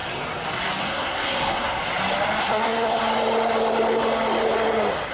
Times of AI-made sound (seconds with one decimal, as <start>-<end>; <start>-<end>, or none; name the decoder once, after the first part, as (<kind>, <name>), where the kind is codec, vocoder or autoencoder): 0.8-1.8 (codec, SNAC); 2.4-3.0